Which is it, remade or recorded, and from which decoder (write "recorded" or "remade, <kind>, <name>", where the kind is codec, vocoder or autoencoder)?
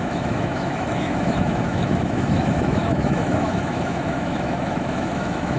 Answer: remade, autoencoder, DAC-VAE